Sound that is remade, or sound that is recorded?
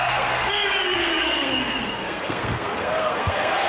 remade